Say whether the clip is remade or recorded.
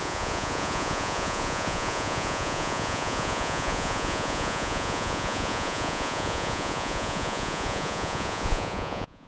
remade